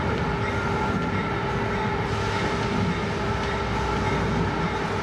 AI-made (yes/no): no